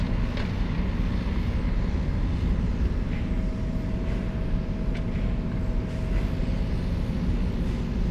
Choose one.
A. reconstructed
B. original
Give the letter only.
B